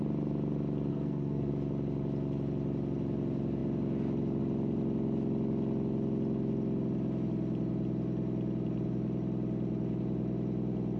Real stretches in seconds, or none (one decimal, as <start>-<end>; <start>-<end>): 0.0-0.9; 1.5-11.0